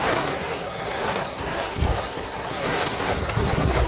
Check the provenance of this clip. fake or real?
fake